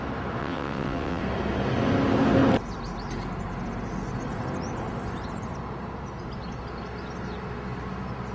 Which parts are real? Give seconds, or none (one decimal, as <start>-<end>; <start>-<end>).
0.0-0.4; 1.2-8.3